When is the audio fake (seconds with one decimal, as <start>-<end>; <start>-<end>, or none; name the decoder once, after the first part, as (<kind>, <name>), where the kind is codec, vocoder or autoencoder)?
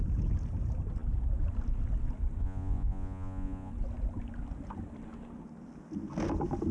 2.4-3.7 (vocoder, Vocos)